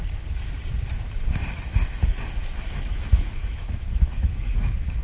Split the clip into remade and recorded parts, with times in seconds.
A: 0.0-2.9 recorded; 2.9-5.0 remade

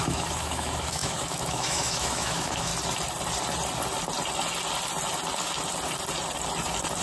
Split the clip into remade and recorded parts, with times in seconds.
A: 0.0-2.7 remade; 2.7-7.0 recorded

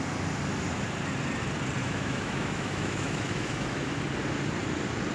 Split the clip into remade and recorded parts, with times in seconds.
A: 0.0-1.8 recorded; 1.8-4.0 remade; 4.0-5.1 recorded

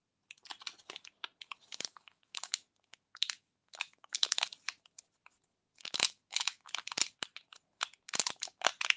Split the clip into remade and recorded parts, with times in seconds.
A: 0.0-1.7 recorded; 1.7-4.4 remade; 4.4-5.7 recorded; 5.7-6.7 remade; 6.7-9.0 recorded

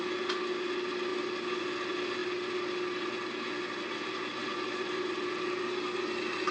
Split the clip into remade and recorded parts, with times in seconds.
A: 0.0-6.5 recorded

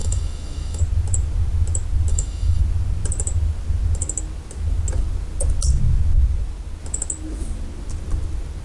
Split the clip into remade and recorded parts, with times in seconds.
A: 0.0-0.8 remade; 0.8-2.1 recorded; 2.1-2.6 remade; 2.6-8.6 recorded